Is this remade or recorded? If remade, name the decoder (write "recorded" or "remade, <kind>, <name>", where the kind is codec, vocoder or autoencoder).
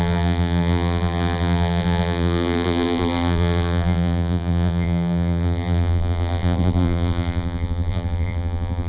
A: remade, vocoder, BigVGAN v2